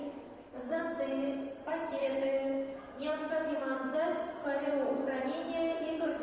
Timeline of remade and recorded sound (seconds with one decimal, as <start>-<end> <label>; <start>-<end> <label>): 0.0-0.8 remade; 0.8-2.0 recorded; 2.0-4.2 remade; 4.2-6.2 recorded